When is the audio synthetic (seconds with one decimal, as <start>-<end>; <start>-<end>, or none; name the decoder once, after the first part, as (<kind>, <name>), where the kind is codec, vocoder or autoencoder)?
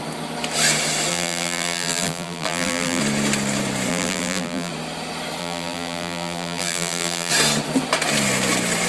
1.1-3.0 (vocoder, BigVGAN v2); 3.9-4.7; 5.4-7.3